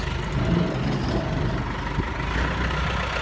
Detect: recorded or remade recorded